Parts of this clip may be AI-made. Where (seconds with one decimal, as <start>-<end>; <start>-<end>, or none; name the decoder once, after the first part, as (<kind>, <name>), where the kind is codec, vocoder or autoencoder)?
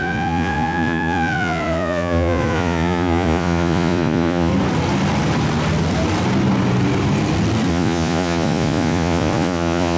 0.0-4.5 (vocoder, Vocos); 7.7-10.0